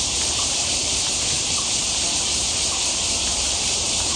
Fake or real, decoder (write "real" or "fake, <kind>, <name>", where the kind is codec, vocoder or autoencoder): fake, vocoder, BigVGAN v2